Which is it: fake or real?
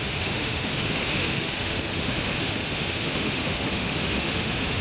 fake